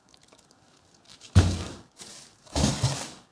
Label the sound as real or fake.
fake